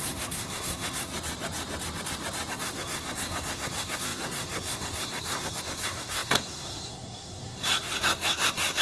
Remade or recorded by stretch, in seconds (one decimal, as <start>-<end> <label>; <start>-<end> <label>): 0.0-1.1 remade; 1.1-2.5 recorded; 2.5-8.8 remade